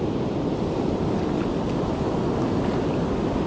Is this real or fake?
real